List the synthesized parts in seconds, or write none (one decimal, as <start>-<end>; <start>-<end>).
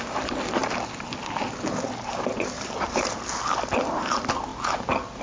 0.0-0.6; 3.7-4.5